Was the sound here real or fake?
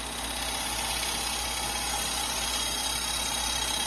real